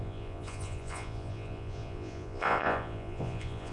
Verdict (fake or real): fake